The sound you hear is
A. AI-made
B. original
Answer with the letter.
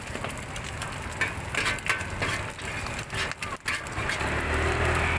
B